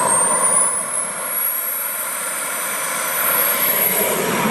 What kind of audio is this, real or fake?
fake